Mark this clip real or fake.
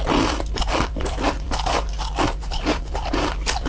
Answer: fake